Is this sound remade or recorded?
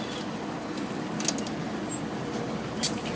recorded